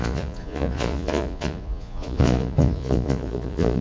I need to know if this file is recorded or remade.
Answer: remade